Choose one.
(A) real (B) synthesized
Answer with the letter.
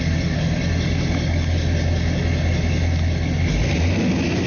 A